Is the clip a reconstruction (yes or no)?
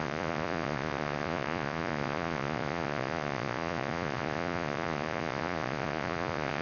yes